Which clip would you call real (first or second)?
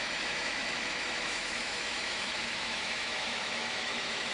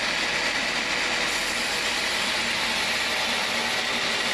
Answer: second